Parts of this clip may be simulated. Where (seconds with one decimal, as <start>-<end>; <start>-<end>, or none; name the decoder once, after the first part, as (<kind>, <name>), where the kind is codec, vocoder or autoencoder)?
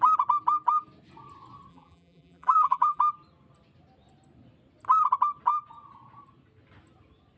1.7-3.0 (vocoder, BigVGAN v2)